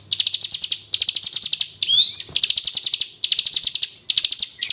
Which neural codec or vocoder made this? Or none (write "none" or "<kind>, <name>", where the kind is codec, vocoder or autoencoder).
none